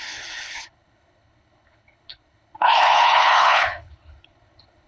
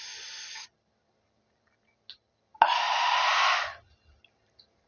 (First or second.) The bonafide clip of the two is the second